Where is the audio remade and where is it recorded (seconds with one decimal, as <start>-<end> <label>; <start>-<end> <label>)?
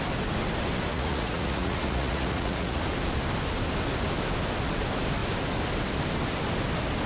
0.0-0.9 recorded; 0.9-2.8 remade; 2.8-7.1 recorded